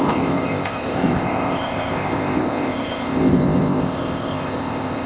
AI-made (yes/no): yes